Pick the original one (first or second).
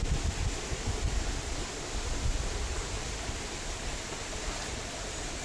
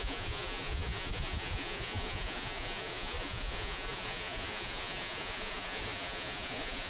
first